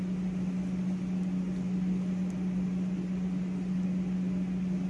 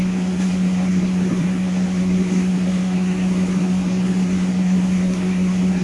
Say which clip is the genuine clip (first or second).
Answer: first